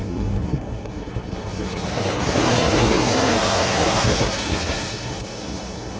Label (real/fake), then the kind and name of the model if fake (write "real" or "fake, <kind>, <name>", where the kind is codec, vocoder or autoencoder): fake, codec, SNAC